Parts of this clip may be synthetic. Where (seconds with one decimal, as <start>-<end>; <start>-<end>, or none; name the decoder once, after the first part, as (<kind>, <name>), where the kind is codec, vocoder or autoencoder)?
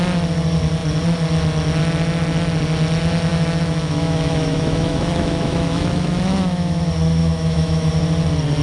3.3-6.8 (autoencoder, DAC-VAE); 7.2-7.9